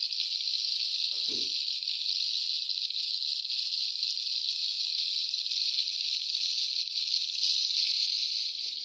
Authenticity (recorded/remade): recorded